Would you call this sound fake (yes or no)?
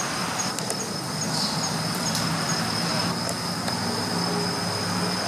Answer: no